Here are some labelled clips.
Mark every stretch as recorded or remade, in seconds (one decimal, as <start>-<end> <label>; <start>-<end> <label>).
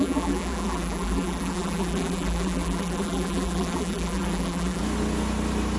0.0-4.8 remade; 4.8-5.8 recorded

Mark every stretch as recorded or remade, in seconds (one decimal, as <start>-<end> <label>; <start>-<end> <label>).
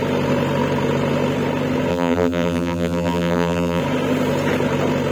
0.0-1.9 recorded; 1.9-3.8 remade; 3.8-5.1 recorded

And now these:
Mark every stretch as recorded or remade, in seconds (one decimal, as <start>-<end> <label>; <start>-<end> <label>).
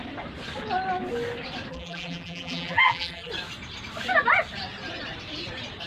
0.0-1.7 recorded; 1.7-3.3 remade; 3.3-5.9 recorded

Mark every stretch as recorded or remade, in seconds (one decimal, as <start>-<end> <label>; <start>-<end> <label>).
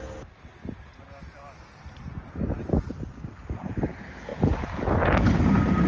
0.0-4.3 recorded; 4.3-4.8 remade; 4.8-5.9 recorded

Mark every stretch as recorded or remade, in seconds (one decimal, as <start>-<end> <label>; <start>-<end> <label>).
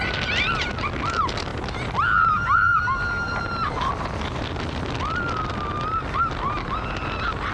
0.0-7.5 recorded